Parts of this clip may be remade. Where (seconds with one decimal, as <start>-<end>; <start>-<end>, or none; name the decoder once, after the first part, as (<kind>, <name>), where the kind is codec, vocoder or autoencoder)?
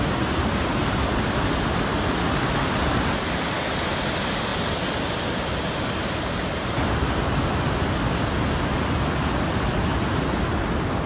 none